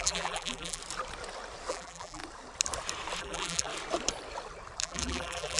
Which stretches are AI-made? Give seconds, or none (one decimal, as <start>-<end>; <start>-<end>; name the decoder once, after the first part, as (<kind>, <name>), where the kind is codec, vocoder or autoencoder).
0.0-0.8 (vocoder, BigVGAN v2); 1.7-2.2; 3.2-3.7; 4.8-5.6

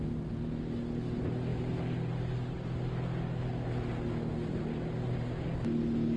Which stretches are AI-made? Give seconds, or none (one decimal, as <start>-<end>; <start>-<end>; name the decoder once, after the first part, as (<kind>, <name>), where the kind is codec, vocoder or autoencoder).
none

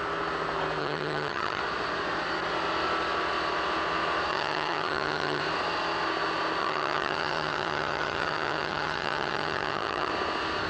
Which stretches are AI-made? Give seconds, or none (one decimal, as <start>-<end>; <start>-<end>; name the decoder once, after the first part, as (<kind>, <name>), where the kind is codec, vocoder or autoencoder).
0.8-1.6 (vocoder, HiFi-GAN); 4.3-5.4; 6.6-10.1

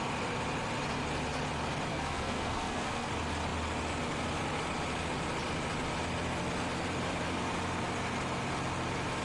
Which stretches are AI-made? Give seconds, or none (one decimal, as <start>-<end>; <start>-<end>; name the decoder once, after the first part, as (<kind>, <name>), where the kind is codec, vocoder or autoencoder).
1.9-3.1 (codec, SNAC)

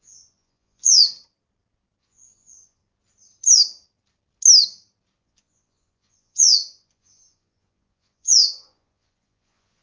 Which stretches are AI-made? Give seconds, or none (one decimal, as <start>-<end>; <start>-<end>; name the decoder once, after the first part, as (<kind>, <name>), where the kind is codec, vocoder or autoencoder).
0.0-1.0 (vocoder, Vocos); 2.0-2.8; 5.2-9.8

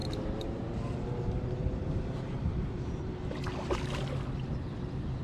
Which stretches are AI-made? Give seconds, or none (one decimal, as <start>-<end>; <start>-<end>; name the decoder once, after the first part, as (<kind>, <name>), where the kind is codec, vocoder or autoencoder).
0.0-3.1 (vocoder, BigVGAN v2)

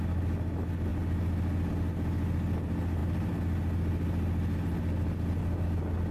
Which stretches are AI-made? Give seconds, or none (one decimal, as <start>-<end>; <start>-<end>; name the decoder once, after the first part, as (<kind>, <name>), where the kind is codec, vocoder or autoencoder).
none